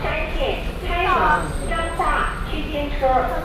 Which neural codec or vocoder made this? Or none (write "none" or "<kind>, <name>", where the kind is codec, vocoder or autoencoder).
none